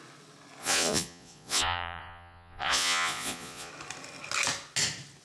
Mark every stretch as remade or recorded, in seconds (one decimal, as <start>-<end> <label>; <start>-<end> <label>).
0.0-0.6 recorded; 0.6-3.7 remade; 3.7-5.2 recorded